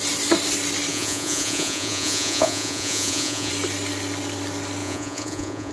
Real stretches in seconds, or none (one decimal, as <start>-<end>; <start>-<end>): 0.0-0.9; 3.5-4.8